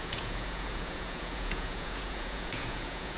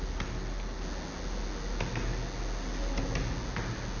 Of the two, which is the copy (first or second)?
first